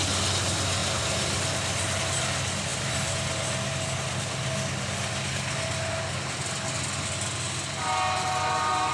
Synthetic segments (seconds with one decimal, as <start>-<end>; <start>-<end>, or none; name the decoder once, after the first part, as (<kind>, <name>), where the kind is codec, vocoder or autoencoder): none